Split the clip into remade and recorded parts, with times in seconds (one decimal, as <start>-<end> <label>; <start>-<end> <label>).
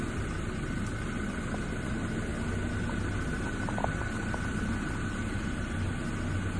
0.0-6.6 recorded